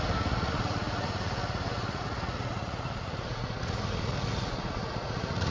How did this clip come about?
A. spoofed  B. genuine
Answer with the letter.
A